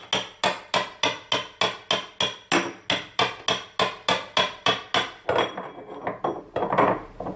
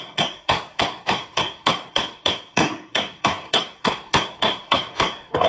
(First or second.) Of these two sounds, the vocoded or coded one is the second